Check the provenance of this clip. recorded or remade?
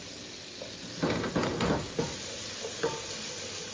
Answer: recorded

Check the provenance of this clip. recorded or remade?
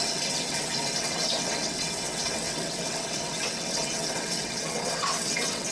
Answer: remade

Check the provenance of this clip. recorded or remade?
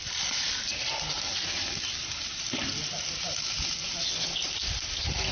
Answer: recorded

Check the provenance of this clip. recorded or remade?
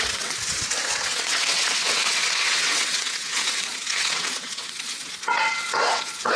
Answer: remade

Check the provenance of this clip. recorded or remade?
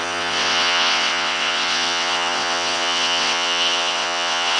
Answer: remade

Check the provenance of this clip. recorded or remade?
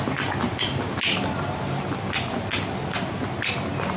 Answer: recorded